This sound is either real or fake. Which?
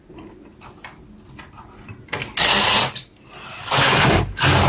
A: real